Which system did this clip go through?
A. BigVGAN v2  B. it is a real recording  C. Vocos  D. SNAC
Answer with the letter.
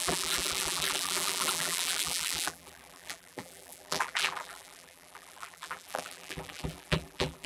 A